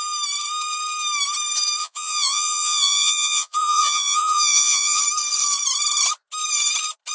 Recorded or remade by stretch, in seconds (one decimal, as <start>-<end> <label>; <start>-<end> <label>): 0.0-1.8 recorded; 1.8-5.0 remade; 5.0-7.1 recorded